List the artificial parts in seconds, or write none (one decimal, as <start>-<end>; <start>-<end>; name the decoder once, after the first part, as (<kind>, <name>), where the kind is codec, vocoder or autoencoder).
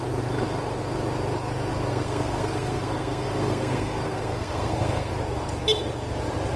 1.9-5.1 (codec, SNAC)